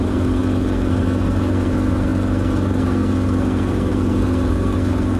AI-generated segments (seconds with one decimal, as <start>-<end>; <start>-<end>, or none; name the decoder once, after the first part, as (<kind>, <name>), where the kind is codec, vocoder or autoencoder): 0.0-5.2 (codec, SNAC)